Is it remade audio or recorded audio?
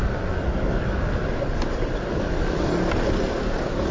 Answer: recorded